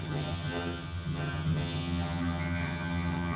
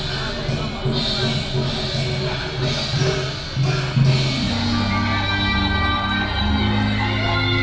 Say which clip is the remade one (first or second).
first